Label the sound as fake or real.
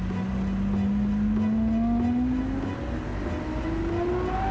real